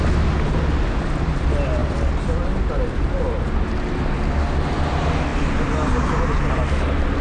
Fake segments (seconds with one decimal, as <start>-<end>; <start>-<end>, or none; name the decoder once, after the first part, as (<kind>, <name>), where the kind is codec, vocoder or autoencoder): none